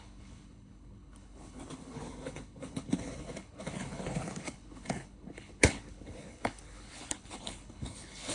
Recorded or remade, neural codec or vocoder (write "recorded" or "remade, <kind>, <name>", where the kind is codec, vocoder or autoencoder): remade, codec, HILCodec